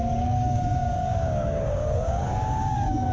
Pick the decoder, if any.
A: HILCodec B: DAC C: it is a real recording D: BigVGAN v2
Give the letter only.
B